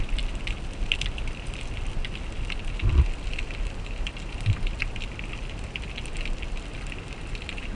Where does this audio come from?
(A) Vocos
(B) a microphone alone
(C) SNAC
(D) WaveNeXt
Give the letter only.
B